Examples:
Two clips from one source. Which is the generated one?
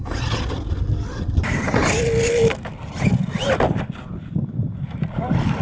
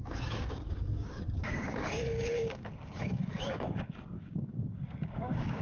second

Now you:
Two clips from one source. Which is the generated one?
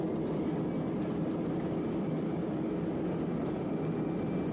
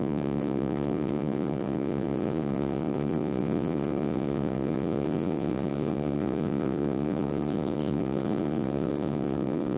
second